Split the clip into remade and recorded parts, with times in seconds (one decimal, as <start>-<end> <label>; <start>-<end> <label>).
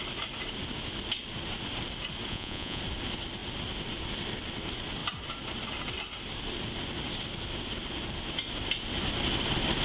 0.0-2.3 recorded; 2.3-2.8 remade; 2.8-9.8 recorded